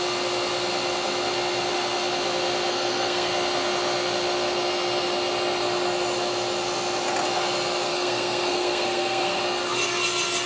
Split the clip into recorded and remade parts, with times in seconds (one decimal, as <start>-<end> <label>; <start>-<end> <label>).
0.0-2.7 recorded; 2.7-3.3 remade; 3.3-7.9 recorded; 7.9-9.4 remade; 9.4-10.5 recorded